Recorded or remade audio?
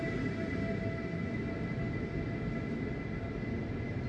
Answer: recorded